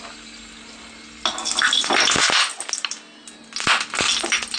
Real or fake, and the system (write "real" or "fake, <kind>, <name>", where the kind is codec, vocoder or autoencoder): real